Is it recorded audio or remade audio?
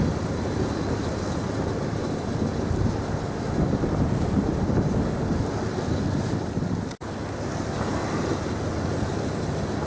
recorded